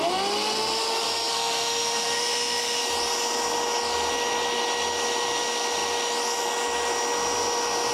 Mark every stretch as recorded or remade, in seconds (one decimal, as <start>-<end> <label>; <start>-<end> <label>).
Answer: 0.0-1.3 recorded; 1.3-2.8 remade; 2.8-7.9 recorded